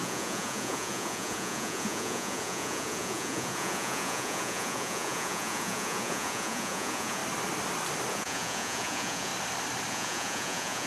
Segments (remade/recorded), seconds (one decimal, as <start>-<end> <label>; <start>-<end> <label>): 0.0-7.2 remade; 7.2-8.1 recorded; 8.1-9.3 remade; 9.3-9.9 recorded; 9.9-10.9 remade

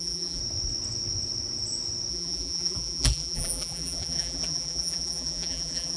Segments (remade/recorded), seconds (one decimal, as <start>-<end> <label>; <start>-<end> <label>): 0.0-0.4 remade; 0.4-2.1 recorded; 2.1-6.0 remade

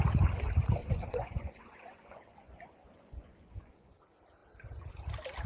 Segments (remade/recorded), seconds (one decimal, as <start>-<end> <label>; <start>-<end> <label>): 0.0-0.8 recorded; 0.8-3.9 remade; 3.9-5.5 recorded

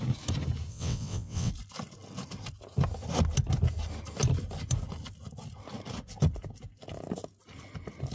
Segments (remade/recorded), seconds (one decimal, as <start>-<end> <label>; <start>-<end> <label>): 0.0-0.7 recorded; 0.7-1.5 remade; 1.5-8.1 recorded